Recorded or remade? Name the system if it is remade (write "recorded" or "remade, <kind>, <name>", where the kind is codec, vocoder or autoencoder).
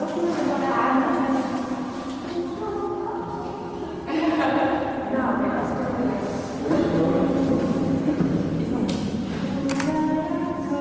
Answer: recorded